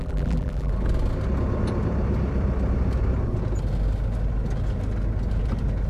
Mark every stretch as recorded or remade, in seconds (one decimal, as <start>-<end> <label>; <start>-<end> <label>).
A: 0.0-0.7 remade; 0.7-5.9 recorded